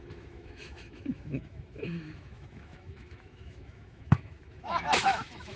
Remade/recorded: remade